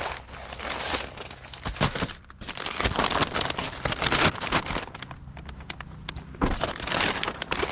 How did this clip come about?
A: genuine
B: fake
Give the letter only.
A